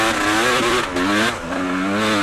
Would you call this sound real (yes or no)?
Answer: yes